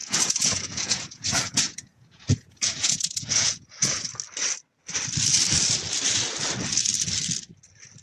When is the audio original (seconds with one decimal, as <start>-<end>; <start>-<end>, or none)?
4.1-8.0